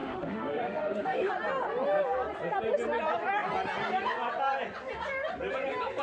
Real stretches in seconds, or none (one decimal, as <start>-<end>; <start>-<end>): 1.3-6.0